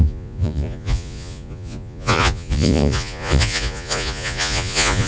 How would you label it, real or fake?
fake